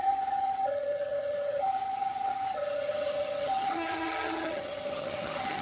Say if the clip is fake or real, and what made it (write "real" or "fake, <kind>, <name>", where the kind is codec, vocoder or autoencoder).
fake, vocoder, HiFi-GAN